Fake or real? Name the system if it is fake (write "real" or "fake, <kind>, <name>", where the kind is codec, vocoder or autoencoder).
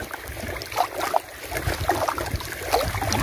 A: real